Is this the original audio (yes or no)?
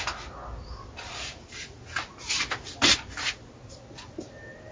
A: yes